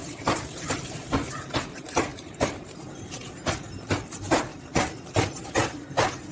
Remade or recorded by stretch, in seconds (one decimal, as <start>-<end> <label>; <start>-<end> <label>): 0.0-1.3 remade; 1.3-2.1 recorded; 2.1-2.8 remade; 2.8-4.5 recorded; 4.5-5.2 remade; 5.2-6.3 recorded